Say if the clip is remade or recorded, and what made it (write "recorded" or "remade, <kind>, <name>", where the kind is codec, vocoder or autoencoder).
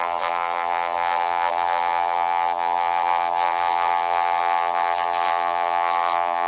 remade, vocoder, BigVGAN v2